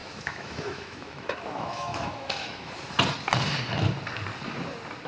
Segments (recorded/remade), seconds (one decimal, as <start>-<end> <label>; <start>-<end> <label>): 0.0-2.7 remade; 2.7-5.1 recorded